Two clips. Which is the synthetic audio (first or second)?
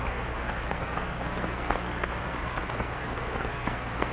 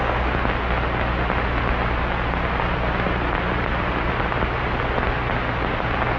first